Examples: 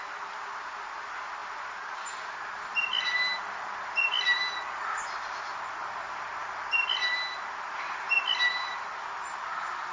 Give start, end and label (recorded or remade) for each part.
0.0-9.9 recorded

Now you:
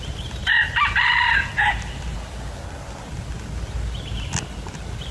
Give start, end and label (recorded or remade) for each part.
0.0-5.1 recorded

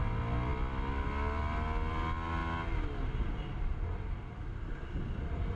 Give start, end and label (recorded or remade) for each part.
0.0-5.6 recorded

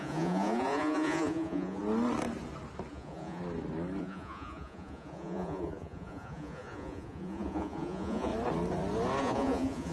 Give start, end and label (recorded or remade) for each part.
0.0-1.8 remade; 1.8-2.9 recorded; 2.9-3.4 remade; 3.4-4.0 recorded; 4.0-8.3 remade; 8.3-9.2 recorded; 9.2-9.9 remade

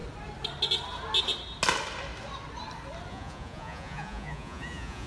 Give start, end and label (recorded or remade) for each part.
0.0-3.1 recorded; 3.1-5.1 remade

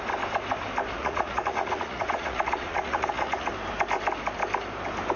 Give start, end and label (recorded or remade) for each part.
0.0-1.0 recorded; 1.0-3.5 remade; 3.5-5.2 recorded

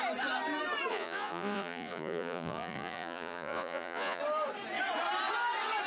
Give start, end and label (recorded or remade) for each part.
0.0-0.9 recorded; 0.9-4.2 remade; 4.2-5.9 recorded

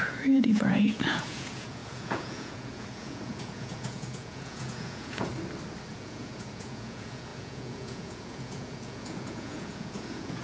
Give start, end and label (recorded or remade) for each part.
0.0-5.3 remade; 5.3-5.9 recorded; 5.9-10.4 remade